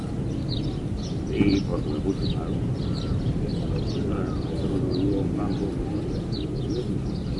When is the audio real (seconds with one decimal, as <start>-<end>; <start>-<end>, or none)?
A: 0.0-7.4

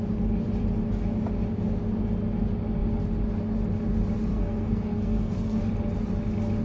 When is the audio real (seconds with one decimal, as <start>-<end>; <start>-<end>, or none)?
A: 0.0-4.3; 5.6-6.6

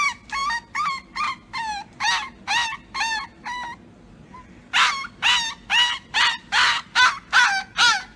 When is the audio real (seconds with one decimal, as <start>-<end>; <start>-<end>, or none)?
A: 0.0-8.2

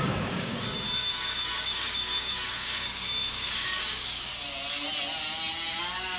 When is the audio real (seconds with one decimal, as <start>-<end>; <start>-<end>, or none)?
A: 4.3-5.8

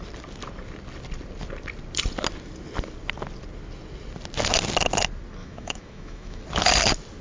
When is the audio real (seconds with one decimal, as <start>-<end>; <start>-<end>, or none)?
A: 0.0-5.4; 6.4-7.2

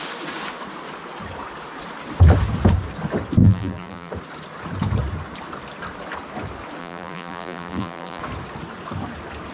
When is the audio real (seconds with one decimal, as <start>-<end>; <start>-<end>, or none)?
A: 0.0-3.4; 4.1-6.8; 8.2-9.5